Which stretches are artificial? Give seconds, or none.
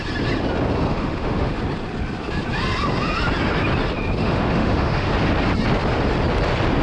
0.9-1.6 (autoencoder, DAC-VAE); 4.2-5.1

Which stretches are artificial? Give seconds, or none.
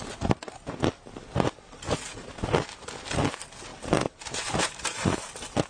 3.7-5.3 (vocoder, BigVGAN v2)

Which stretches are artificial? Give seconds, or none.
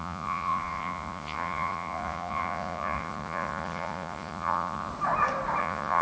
0.0-4.9 (vocoder, Vocos); 5.6-6.0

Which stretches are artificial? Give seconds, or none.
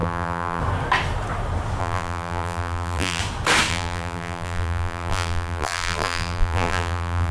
0.0-0.6 (vocoder, BigVGAN v2); 1.8-3.2; 3.7-7.3